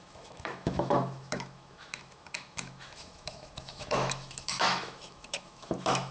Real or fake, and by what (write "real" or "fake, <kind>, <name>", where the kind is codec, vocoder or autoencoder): fake, autoencoder, DAC-VAE